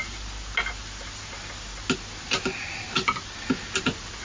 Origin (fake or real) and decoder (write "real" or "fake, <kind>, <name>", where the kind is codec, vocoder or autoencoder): real